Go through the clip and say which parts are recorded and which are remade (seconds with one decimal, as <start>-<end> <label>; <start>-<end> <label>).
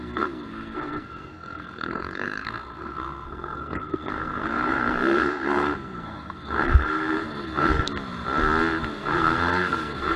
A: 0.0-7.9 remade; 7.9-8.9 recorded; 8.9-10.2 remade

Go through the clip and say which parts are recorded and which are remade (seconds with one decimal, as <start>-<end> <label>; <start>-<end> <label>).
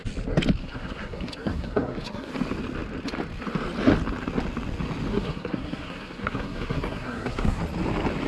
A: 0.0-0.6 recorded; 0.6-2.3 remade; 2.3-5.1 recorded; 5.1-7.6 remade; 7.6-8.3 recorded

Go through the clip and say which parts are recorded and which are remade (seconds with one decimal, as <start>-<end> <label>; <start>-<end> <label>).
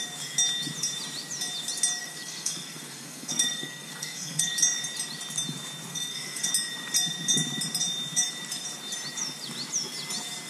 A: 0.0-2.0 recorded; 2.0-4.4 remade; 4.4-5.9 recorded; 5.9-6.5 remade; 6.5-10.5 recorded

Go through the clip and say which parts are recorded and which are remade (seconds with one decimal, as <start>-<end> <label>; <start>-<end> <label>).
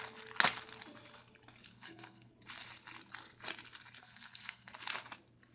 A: 0.0-1.7 recorded; 1.7-2.3 remade; 2.3-4.0 recorded; 4.0-4.7 remade; 4.7-5.5 recorded